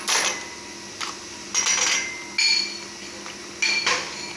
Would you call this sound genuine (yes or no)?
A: yes